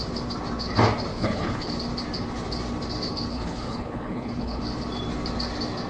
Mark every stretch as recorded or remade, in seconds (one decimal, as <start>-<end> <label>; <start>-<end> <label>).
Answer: 0.0-1.1 recorded; 1.1-1.7 remade; 1.7-3.3 recorded; 3.3-4.6 remade; 4.6-5.9 recorded